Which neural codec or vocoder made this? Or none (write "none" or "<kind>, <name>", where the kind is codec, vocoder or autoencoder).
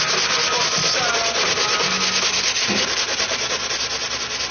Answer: none